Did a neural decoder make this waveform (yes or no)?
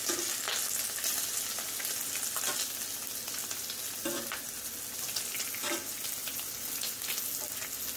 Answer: no